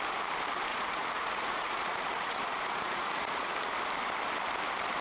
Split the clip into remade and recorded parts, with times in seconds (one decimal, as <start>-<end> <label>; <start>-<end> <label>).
0.0-0.7 recorded; 0.7-3.7 remade; 3.7-5.0 recorded